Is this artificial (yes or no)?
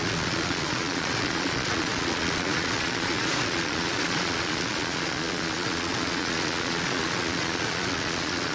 yes